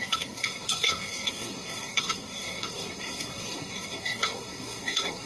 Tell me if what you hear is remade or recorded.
remade